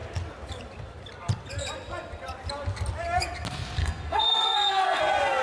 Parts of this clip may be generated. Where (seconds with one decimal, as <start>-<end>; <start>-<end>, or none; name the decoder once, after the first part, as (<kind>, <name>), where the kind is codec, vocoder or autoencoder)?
3.8-5.0 (codec, SNAC)